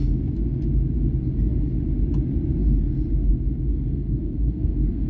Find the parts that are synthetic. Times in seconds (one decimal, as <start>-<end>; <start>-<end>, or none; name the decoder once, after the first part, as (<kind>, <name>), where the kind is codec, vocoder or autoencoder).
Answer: 3.7-5.1 (codec, SNAC)